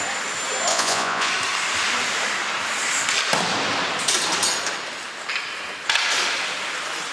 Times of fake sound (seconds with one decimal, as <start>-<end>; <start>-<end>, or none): 0.7-1.3

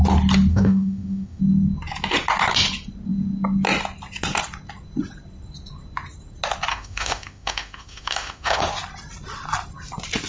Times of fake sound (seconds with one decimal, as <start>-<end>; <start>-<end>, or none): 0.5-1.4; 6.7-8.6